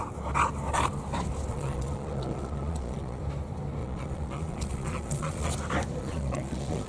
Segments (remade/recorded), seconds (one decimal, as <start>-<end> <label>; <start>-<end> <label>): 0.0-1.5 recorded; 1.5-3.2 remade; 3.2-3.8 recorded; 3.8-5.5 remade; 5.5-6.0 recorded; 6.0-6.9 remade